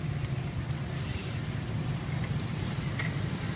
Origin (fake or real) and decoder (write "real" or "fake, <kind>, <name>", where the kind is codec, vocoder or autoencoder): real